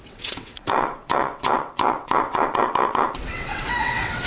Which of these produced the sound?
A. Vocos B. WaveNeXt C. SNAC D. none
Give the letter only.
B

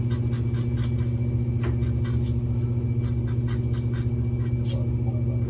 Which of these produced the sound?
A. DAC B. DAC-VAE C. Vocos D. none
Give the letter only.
D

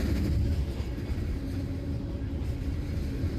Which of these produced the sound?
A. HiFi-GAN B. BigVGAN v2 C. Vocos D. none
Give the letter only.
D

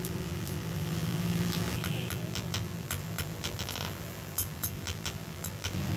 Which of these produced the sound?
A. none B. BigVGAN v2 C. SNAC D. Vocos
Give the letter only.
B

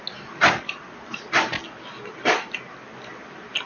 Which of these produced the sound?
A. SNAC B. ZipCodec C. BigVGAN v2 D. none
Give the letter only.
D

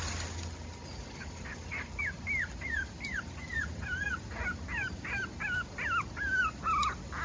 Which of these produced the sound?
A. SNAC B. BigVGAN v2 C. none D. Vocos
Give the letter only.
C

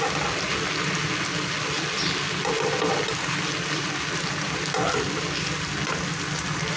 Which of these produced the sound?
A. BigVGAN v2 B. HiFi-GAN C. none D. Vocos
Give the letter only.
C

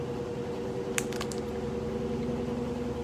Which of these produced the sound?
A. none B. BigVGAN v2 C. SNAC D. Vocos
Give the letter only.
A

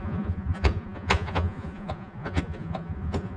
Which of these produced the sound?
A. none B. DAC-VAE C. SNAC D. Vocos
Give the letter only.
D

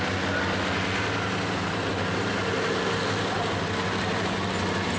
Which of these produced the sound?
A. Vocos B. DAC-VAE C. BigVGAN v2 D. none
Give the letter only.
D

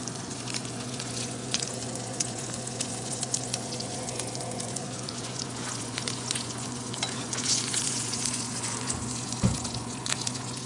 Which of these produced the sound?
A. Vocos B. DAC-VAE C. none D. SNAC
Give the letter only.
A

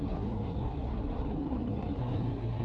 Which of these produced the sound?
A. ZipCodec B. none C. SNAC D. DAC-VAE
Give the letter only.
C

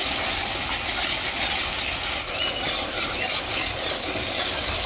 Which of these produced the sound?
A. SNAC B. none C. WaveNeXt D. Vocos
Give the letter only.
B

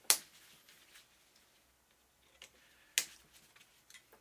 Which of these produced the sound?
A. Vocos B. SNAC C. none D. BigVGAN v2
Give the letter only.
C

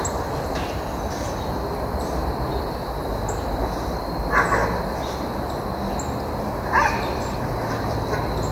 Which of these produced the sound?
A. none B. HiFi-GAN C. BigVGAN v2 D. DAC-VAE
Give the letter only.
A